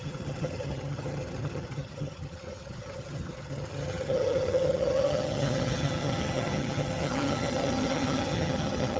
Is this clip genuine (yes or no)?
no